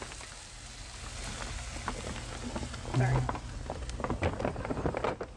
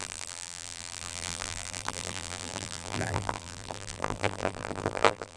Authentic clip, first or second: first